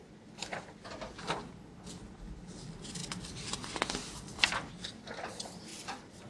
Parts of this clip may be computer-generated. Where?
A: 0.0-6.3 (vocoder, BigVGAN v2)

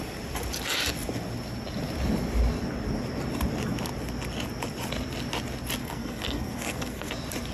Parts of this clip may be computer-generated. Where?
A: 5.8-7.1 (codec, SNAC)

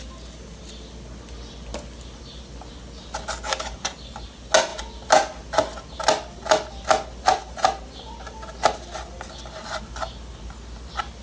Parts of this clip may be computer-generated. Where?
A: none